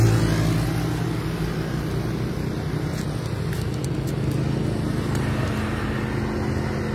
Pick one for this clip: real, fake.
real